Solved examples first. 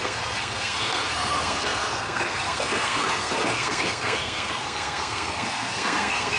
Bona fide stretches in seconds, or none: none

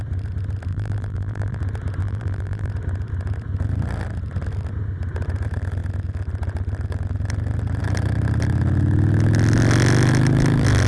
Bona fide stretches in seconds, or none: 0.0-0.7; 1.6-2.0; 2.7-10.9